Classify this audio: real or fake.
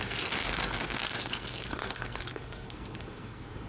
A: fake